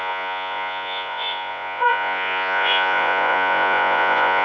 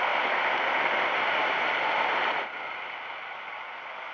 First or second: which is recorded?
second